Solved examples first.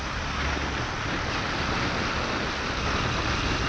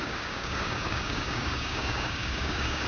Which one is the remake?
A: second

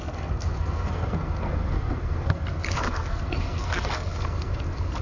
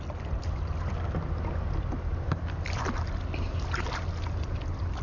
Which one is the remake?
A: first